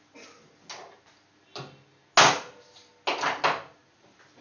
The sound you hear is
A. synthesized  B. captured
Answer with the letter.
B